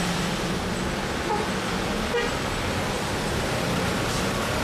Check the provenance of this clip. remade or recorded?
remade